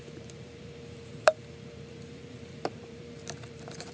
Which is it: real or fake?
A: fake